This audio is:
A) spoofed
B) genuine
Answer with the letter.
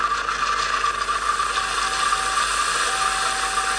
B